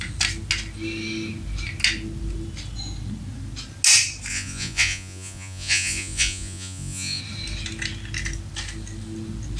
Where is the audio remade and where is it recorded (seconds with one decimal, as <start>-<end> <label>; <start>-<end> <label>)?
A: 0.0-4.3 recorded; 4.3-7.2 remade; 7.2-9.6 recorded